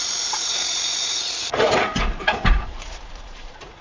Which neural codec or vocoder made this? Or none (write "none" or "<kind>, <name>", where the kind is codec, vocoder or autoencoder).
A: vocoder, Vocos